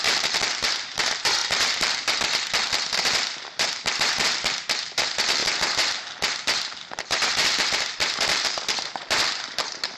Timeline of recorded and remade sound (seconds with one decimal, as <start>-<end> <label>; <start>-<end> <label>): 0.0-5.4 remade; 5.4-7.1 recorded; 7.1-10.0 remade